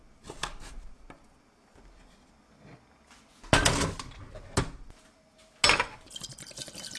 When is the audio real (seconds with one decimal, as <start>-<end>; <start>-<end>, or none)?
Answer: 0.0-7.0